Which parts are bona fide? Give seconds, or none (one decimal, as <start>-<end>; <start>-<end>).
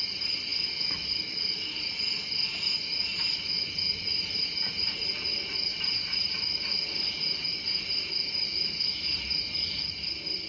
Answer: 0.0-0.5; 1.1-3.3; 8.1-10.5